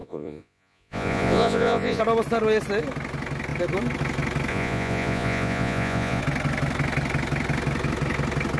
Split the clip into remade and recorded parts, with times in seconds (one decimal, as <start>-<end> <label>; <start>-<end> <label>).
0.0-2.0 remade; 2.0-4.5 recorded; 4.5-6.2 remade; 6.2-8.6 recorded